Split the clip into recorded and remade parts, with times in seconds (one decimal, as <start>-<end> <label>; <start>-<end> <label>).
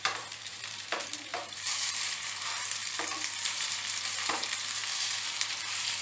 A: 0.0-2.8 remade; 2.8-3.4 recorded; 3.4-6.0 remade